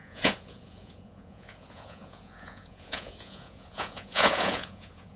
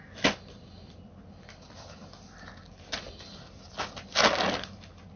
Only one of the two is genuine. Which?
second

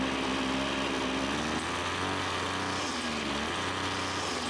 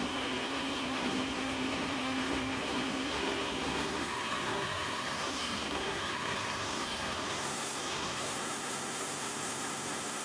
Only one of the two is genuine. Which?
first